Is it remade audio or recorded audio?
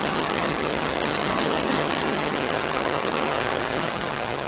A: remade